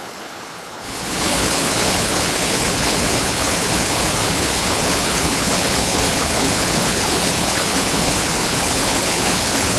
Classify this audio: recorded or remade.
remade